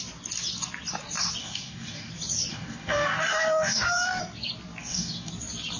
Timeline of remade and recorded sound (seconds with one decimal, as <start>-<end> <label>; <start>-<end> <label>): 0.0-1.4 recorded; 1.4-2.1 remade; 2.1-2.5 recorded; 2.5-4.2 remade; 4.2-4.8 recorded; 4.8-5.3 remade; 5.3-5.8 recorded